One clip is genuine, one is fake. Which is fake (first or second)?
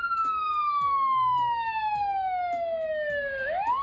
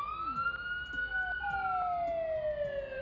first